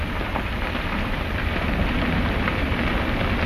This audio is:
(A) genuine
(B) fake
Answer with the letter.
A